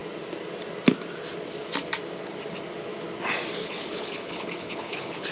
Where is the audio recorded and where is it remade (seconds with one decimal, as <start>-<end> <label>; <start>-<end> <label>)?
0.0-3.6 recorded; 3.6-5.3 remade